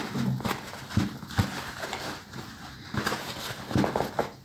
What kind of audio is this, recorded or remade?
recorded